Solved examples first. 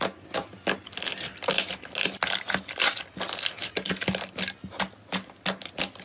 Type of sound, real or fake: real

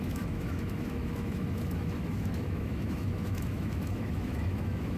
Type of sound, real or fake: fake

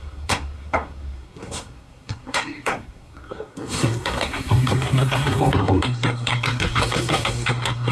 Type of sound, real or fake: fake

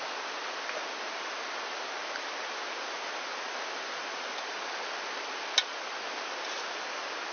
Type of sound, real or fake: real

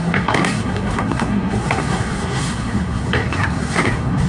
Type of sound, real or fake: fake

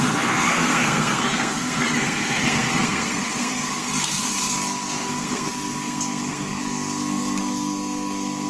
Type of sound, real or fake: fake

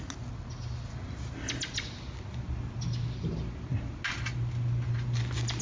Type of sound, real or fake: real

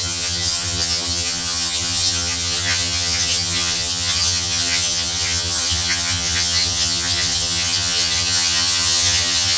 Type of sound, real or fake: fake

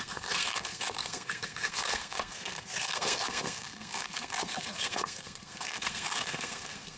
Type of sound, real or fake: fake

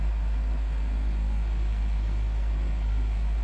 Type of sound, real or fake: fake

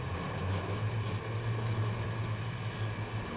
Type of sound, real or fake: real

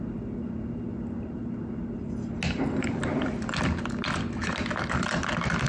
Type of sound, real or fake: real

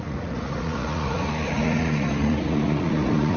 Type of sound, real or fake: fake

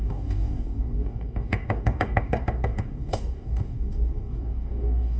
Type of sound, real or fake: fake